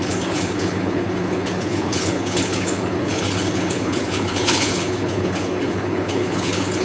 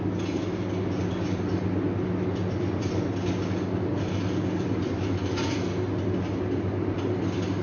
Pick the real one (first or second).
second